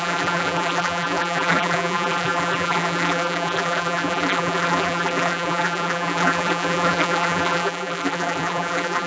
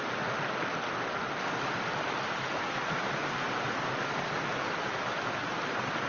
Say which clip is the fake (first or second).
first